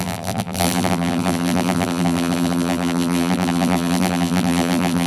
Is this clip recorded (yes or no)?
no